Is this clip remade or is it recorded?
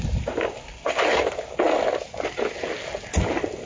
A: recorded